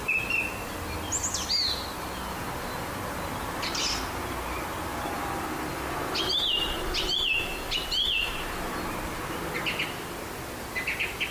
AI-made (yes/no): no